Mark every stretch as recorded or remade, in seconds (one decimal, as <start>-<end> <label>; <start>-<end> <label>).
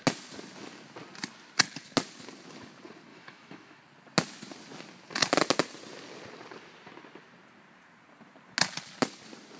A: 0.0-3.1 recorded; 3.1-3.8 remade; 3.8-9.6 recorded